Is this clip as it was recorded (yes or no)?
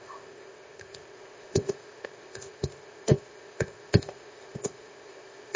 no